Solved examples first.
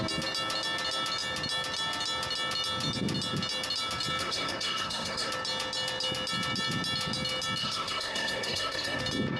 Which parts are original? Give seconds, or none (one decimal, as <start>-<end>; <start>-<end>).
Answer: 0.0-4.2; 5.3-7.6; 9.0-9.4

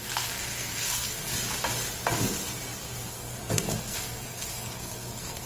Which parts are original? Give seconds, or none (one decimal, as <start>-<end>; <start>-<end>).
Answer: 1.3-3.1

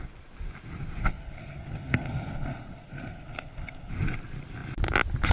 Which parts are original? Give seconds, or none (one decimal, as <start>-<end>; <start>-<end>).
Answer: 0.0-1.0; 3.9-5.3

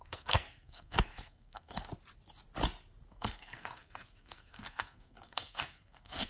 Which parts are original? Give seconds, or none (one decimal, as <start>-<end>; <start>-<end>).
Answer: 1.9-3.1